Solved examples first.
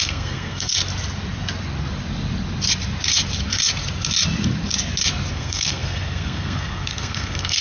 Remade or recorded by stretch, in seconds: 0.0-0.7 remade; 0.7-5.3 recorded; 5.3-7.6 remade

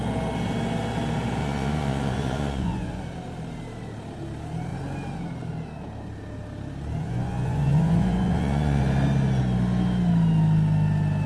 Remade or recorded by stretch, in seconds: 0.0-1.4 recorded; 1.4-3.0 remade; 3.0-7.0 recorded; 7.0-8.8 remade; 8.8-11.3 recorded

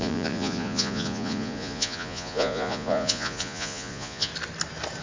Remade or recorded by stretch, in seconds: 0.0-4.3 remade; 4.3-5.0 recorded

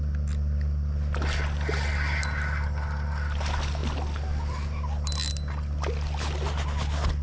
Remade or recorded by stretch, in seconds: 0.0-7.2 recorded

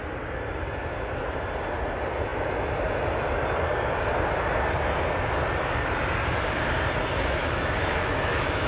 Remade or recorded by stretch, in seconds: 0.0-7.4 recorded; 7.4-8.7 remade